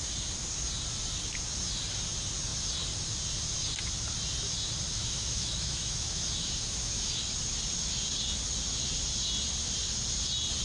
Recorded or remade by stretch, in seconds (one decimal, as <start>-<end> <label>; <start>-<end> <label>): 0.0-5.0 recorded; 5.0-7.1 remade; 7.1-10.6 recorded